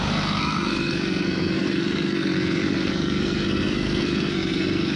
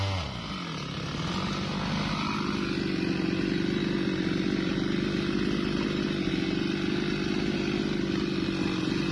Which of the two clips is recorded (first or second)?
second